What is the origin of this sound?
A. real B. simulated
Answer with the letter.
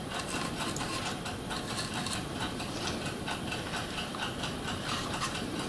A